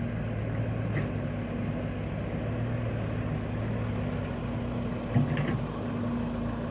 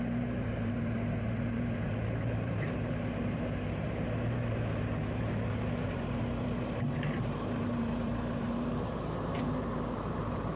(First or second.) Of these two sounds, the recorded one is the first